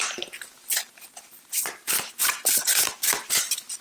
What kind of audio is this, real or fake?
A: fake